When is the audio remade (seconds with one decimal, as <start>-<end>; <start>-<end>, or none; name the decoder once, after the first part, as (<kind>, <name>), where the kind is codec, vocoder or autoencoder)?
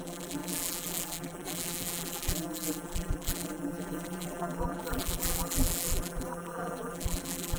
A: 0.0-7.6 (vocoder, BigVGAN v2)